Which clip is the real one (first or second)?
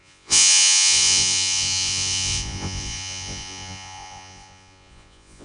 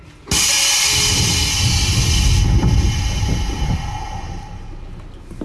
second